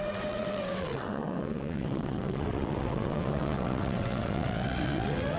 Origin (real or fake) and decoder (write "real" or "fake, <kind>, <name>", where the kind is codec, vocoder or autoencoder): fake, vocoder, WaveNeXt